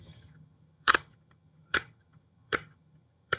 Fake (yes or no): yes